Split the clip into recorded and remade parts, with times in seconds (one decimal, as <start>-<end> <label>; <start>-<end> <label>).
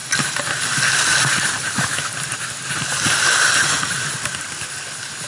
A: 0.0-1.7 recorded; 1.7-2.1 remade; 2.1-5.3 recorded